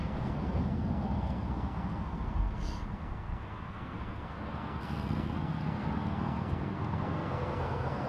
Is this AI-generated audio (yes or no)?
yes